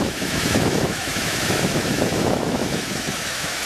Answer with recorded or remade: remade